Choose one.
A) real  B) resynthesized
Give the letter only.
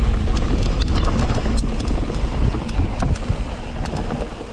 A